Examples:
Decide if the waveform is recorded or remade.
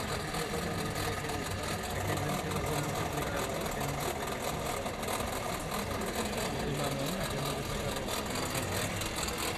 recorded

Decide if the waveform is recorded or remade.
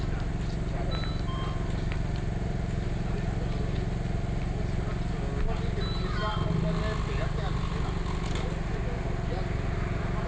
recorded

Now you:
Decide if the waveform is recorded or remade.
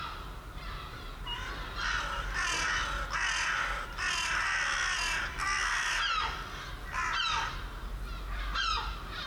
recorded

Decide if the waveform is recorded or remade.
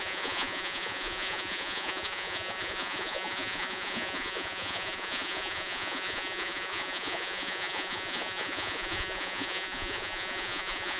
remade